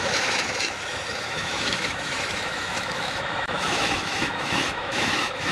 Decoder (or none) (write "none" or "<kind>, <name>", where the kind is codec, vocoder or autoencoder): autoencoder, DAC-VAE